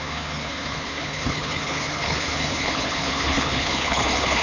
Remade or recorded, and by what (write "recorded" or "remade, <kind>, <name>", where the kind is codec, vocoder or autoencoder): remade, codec, HILCodec